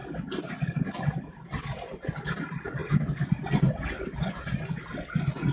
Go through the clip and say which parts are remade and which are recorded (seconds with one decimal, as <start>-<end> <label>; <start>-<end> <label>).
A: 0.0-5.5 recorded